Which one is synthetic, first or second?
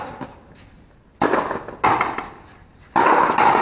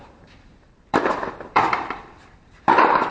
second